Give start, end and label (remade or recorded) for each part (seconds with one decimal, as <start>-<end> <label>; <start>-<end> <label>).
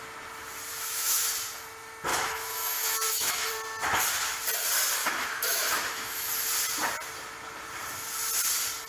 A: 0.0-0.7 recorded; 0.7-1.3 remade; 1.3-2.1 recorded; 2.1-3.5 remade; 3.5-5.0 recorded; 5.0-6.3 remade; 6.3-8.9 recorded